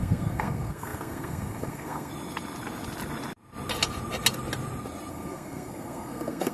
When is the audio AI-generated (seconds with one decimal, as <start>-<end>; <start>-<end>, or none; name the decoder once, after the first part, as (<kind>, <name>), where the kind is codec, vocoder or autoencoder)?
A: 0.0-2.1 (codec, SNAC); 5.1-6.5